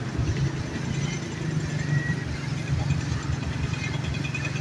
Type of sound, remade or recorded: recorded